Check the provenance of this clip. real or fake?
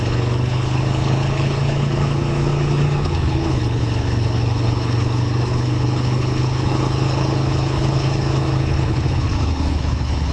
fake